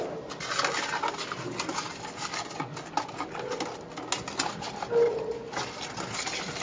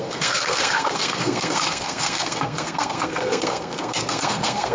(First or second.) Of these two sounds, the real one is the first